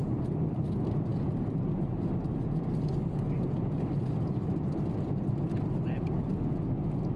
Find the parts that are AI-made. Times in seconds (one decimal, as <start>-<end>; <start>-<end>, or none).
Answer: none

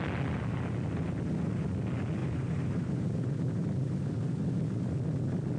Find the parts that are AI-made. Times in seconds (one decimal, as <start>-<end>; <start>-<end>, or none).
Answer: 2.2-3.6